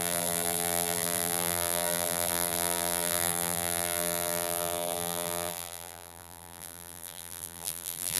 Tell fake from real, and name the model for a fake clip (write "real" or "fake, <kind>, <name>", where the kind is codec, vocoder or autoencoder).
fake, vocoder, BigVGAN v2